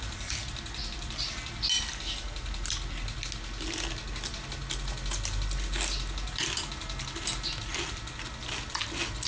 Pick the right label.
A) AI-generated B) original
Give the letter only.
B